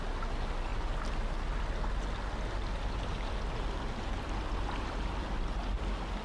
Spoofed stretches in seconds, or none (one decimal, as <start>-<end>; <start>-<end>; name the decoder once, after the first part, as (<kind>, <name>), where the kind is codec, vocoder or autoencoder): none